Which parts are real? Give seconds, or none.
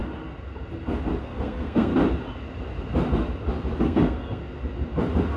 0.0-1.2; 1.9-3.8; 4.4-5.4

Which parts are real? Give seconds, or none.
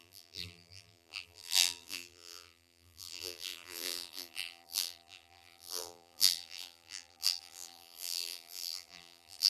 none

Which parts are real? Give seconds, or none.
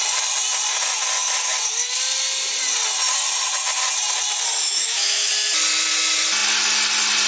0.0-4.6; 5.3-7.3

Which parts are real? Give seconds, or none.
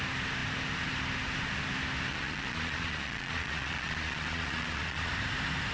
0.0-2.1; 5.1-5.7